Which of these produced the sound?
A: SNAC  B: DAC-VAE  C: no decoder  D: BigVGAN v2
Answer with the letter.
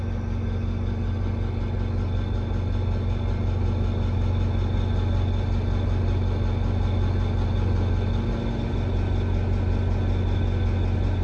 C